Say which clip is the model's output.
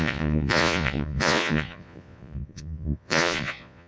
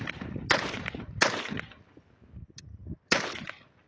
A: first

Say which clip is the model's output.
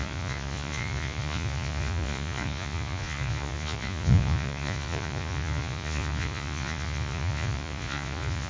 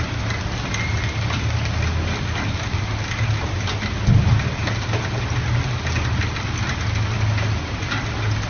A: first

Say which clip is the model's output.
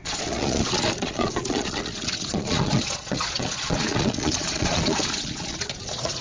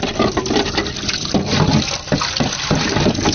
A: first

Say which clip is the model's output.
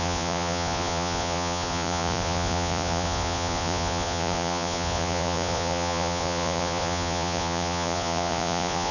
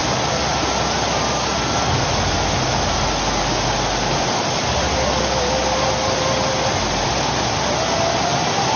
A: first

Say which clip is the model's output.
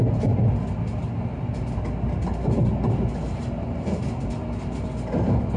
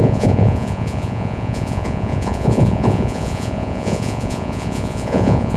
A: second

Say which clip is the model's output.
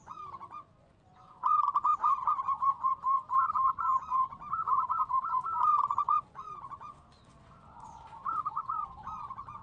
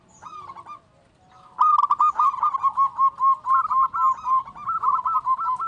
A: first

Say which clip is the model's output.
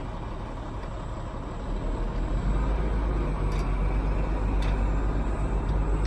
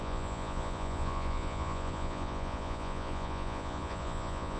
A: second